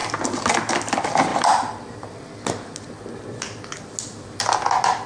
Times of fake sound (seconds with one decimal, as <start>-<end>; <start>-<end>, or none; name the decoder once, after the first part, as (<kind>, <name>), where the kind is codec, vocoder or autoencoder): none